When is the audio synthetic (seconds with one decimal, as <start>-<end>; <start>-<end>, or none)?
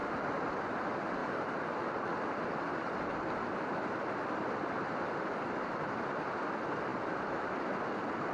none